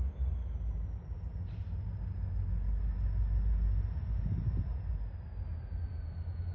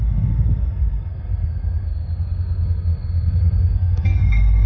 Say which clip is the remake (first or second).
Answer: second